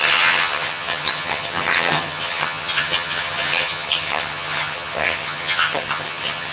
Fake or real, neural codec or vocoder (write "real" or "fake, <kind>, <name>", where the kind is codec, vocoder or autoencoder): fake, vocoder, HiFi-GAN